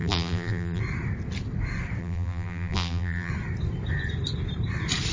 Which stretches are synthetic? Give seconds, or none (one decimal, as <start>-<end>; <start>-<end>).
0.0-0.8; 2.0-3.3